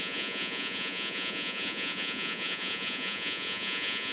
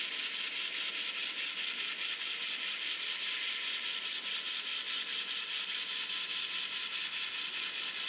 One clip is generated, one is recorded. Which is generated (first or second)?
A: first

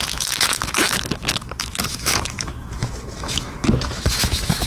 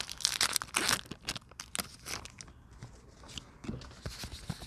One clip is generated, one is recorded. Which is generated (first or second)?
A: first